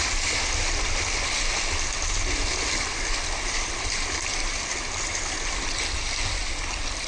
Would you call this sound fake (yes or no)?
no